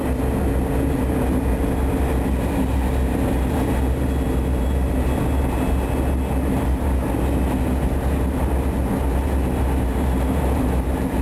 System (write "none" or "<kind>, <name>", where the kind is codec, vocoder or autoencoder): none